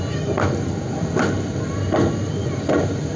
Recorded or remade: recorded